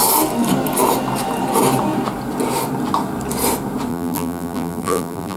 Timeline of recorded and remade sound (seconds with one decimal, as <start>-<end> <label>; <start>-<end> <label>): 0.0-3.9 recorded; 3.9-5.4 remade